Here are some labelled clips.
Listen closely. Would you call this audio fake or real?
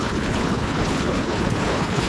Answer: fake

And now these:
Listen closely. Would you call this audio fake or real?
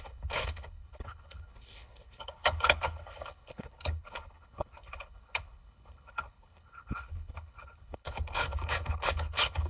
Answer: fake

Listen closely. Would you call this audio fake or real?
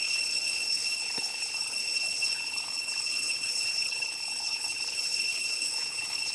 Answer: fake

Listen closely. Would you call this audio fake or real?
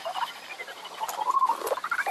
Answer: real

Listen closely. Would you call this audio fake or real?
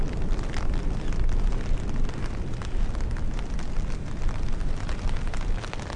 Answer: real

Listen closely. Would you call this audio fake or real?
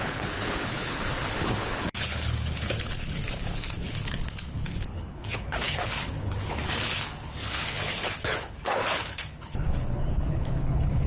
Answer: fake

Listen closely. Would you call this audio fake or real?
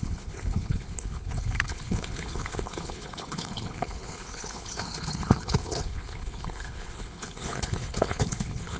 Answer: fake